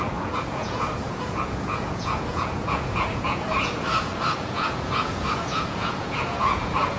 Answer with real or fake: fake